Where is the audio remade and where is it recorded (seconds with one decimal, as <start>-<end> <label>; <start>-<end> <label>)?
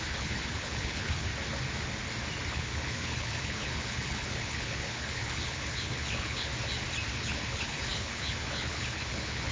0.0-1.3 remade; 1.3-2.5 recorded; 2.5-6.5 remade; 6.5-7.1 recorded; 7.1-9.5 remade